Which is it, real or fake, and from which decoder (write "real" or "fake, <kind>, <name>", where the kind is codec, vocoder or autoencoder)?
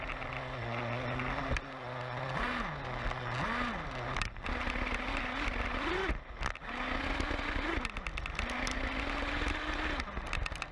real